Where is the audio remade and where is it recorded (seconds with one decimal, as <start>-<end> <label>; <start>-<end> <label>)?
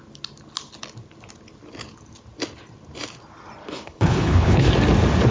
0.0-3.6 recorded; 3.6-4.7 remade; 4.7-5.3 recorded